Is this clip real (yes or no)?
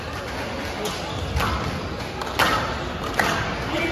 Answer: yes